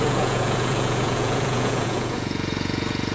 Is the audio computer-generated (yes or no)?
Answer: yes